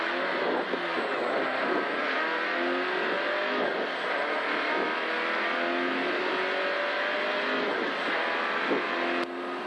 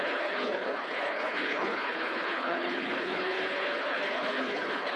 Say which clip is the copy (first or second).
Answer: second